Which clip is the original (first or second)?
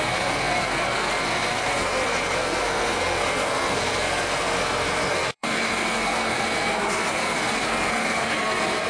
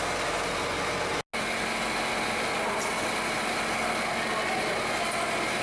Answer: second